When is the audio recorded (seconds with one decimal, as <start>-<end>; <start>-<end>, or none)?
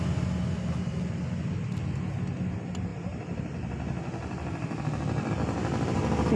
0.0-6.4